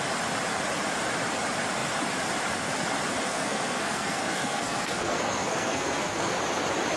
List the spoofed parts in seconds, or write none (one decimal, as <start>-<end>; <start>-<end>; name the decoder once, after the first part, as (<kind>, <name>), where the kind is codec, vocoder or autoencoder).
3.3-6.4 (codec, SNAC)